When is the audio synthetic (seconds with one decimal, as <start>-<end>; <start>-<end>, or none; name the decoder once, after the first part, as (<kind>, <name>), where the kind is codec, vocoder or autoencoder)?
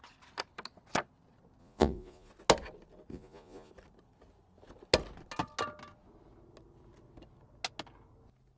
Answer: 1.6-2.3 (vocoder, Vocos); 3.1-3.7